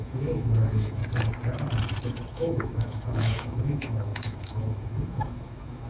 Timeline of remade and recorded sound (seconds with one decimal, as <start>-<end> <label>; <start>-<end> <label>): 0.0-1.0 remade; 1.0-2.3 recorded; 2.3-5.9 remade